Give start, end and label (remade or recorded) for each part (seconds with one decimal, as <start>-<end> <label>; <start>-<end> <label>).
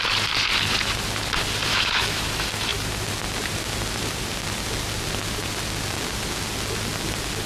0.0-1.7 recorded; 1.7-2.2 remade; 2.2-7.5 recorded